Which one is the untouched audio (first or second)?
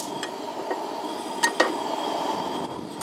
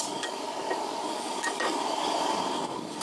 first